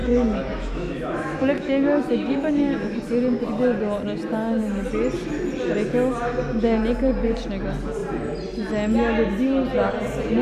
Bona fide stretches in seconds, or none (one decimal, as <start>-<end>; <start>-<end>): 3.0-10.4